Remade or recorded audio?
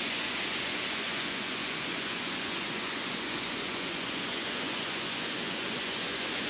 remade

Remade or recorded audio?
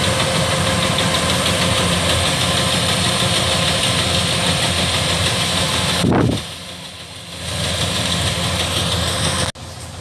recorded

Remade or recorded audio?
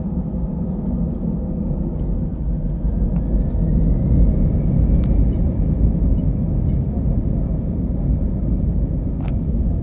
recorded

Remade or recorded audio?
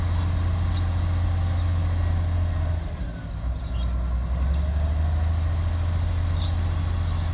recorded